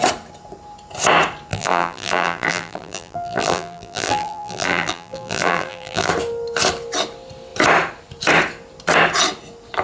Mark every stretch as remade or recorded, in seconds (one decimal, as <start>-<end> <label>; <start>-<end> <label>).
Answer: 0.0-1.5 recorded; 1.5-6.1 remade; 6.1-9.8 recorded